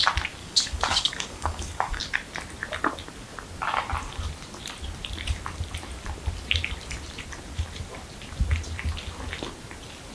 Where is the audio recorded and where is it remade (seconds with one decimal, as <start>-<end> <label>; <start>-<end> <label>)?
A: 0.0-0.4 recorded; 0.4-2.0 remade; 2.0-10.1 recorded